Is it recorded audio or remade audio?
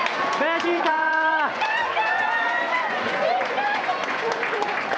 remade